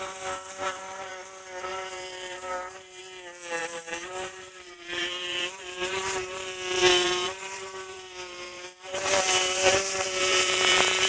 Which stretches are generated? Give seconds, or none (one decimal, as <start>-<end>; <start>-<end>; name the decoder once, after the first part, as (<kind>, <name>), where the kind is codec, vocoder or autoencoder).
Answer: 0.0-1.1 (vocoder, BigVGAN v2); 1.7-3.0; 3.6-11.1

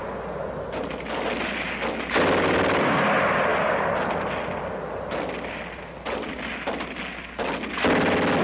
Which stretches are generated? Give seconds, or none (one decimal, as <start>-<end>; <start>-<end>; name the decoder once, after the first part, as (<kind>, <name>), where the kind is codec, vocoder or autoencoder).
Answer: none

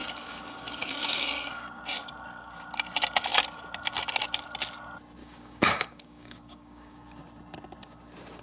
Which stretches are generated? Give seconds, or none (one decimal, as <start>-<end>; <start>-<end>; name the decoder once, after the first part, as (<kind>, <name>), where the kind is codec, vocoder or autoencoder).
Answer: 0.0-1.8 (codec, DAC); 5.2-7.2

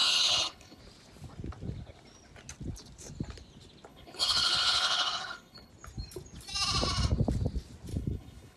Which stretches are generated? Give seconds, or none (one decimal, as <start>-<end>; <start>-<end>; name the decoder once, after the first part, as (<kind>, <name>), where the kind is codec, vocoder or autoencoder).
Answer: 0.0-0.8 (codec, HILCodec); 3.9-5.7; 7.9-8.6

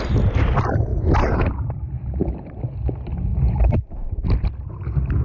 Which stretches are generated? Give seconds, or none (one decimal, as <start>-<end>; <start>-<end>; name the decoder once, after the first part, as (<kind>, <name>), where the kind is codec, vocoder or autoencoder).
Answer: 0.9-2.6 (vocoder, BigVGAN v2); 3.3-4.1

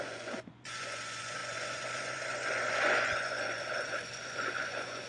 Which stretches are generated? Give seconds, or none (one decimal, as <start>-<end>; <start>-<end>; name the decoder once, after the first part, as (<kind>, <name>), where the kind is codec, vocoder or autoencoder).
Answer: 0.0-5.1 (vocoder, Vocos)

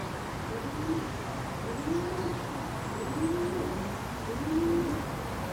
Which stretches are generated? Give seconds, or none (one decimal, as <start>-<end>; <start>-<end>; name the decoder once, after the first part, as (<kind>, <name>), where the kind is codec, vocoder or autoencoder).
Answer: none

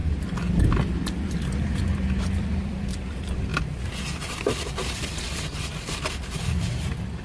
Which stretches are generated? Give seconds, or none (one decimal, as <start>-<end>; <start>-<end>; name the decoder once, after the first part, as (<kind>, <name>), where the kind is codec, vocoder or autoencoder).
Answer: 2.8-3.5 (vocoder, BigVGAN v2); 6.1-7.2